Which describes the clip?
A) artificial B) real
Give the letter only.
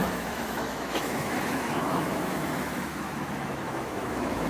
A